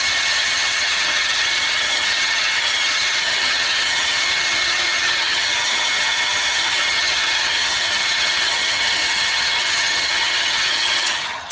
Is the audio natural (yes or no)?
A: no